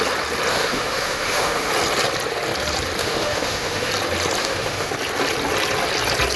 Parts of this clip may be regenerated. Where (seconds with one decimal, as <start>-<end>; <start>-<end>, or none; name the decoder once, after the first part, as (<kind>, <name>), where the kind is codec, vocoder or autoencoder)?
0.5-1.7 (autoencoder, DAC-VAE); 3.0-3.9; 4.4-4.9

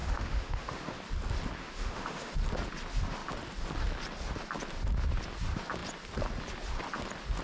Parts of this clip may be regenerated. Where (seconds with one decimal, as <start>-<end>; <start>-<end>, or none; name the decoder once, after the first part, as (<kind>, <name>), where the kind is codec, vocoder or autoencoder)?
0.0-1.0 (autoencoder, DAC-VAE); 1.6-2.3

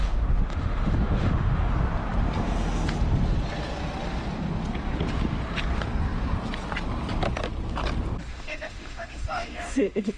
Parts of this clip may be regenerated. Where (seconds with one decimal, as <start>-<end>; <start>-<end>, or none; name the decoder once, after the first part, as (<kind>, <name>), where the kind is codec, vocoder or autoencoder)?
0.0-1.7 (autoencoder, DAC-VAE); 8.3-10.2

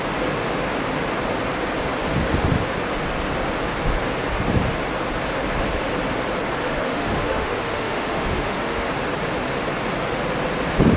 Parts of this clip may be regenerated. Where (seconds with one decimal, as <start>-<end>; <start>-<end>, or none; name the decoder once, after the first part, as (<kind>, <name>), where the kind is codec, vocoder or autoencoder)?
6.6-8.9 (autoencoder, DAC-VAE)